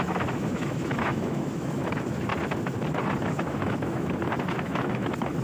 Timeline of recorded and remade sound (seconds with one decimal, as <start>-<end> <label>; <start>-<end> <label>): 0.0-2.3 remade; 2.3-3.2 recorded; 3.2-5.4 remade

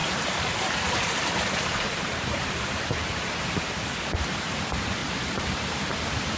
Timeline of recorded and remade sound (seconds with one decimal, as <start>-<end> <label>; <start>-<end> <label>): 0.0-3.8 remade; 3.8-6.4 recorded

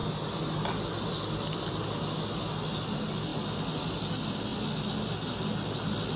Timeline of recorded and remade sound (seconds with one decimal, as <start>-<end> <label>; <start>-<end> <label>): 0.0-6.2 recorded